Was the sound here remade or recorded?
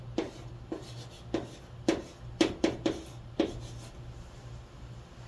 recorded